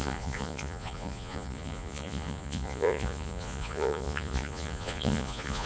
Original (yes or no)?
no